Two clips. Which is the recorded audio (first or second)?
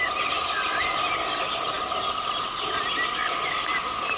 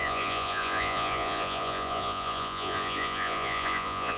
first